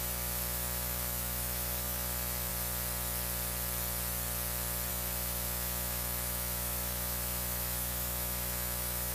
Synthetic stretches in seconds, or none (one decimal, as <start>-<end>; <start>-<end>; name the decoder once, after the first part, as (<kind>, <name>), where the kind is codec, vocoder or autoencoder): 0.0-2.5 (autoencoder, DAC-VAE); 4.9-9.1